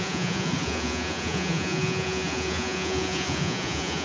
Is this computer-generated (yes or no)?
yes